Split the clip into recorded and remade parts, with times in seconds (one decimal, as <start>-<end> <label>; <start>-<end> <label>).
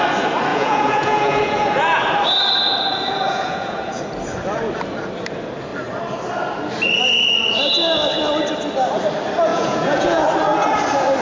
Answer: 0.0-0.5 recorded; 0.5-2.0 remade; 2.0-2.9 recorded; 2.9-4.0 remade; 4.0-9.5 recorded; 9.5-10.2 remade; 10.2-11.2 recorded